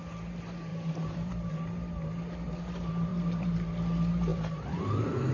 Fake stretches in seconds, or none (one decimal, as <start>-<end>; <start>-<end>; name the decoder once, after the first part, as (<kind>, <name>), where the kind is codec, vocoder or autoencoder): 0.7-1.5 (vocoder, BigVGAN v2); 3.1-3.7; 4.3-5.3